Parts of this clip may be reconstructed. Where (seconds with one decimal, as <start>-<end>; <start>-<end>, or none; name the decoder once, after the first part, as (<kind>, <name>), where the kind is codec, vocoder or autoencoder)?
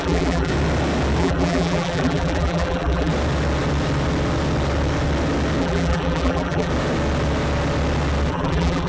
0.0-0.5 (vocoder, BigVGAN v2); 1.2-3.1; 5.6-6.7; 8.3-8.9